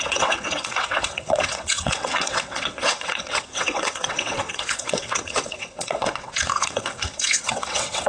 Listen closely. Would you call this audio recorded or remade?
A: remade